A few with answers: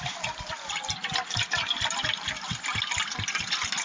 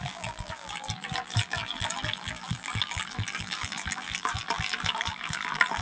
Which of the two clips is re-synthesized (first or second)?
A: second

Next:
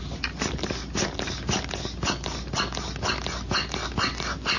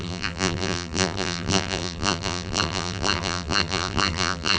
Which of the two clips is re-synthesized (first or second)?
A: second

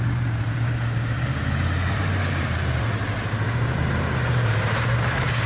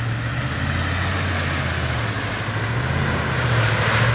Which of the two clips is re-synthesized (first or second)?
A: first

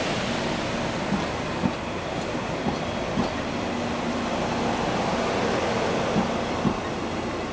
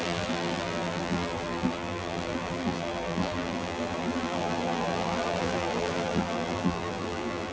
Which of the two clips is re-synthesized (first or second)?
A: second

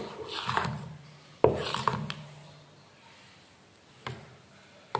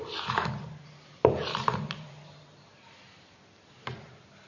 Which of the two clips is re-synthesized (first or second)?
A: second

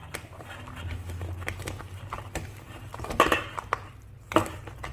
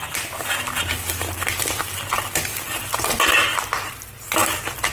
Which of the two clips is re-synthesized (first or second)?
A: first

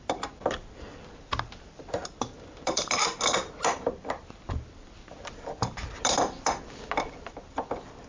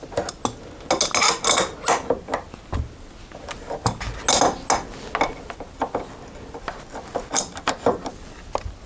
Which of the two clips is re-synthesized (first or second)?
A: first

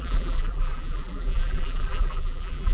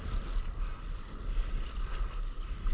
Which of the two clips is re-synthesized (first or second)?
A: first